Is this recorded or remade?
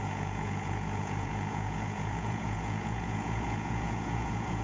remade